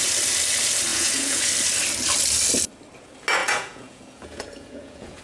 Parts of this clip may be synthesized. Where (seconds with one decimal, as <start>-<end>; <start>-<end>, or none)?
0.9-1.5; 3.4-5.2